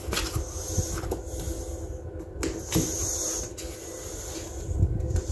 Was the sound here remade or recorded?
recorded